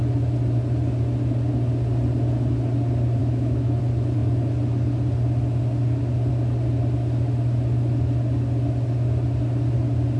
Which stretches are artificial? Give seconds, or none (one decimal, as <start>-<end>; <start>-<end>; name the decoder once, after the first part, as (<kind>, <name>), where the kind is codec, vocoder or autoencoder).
3.2-3.8 (autoencoder, DAC-VAE)